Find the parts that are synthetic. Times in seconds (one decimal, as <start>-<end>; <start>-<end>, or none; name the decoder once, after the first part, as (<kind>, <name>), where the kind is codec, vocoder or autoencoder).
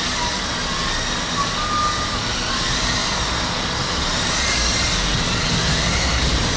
0.0-0.5 (vocoder, BigVGAN v2); 2.5-3.0; 3.9-5.1; 5.9-6.6